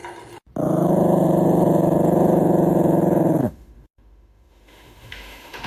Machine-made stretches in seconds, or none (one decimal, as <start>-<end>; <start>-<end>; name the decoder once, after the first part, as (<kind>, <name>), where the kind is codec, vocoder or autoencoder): 3.4-5.7 (autoencoder, DAC-VAE)